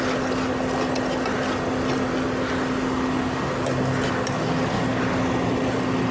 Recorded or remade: recorded